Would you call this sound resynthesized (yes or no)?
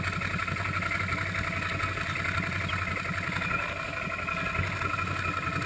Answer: no